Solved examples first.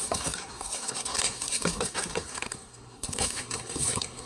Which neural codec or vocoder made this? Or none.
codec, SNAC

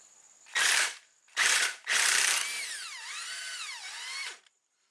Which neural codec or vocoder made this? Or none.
vocoder, BigVGAN v2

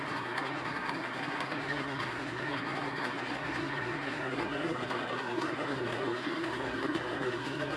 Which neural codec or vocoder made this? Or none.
codec, SNAC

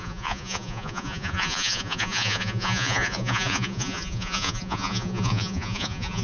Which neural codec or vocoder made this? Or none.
vocoder, Vocos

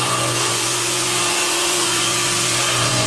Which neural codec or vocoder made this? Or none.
vocoder, Vocos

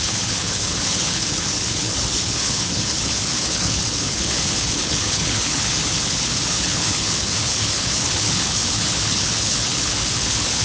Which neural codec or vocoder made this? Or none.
codec, HILCodec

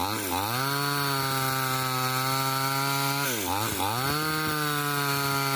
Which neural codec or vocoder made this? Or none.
none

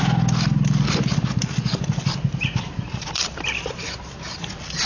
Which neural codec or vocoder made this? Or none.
none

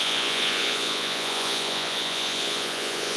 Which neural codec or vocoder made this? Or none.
vocoder, Vocos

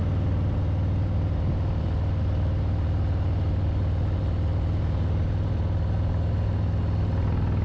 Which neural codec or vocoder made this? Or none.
none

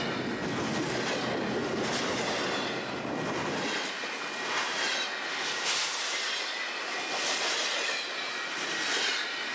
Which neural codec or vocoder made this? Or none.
none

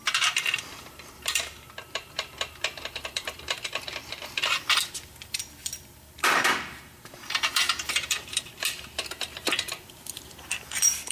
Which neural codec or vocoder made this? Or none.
vocoder, BigVGAN v2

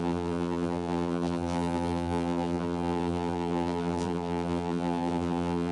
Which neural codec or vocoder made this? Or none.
vocoder, BigVGAN v2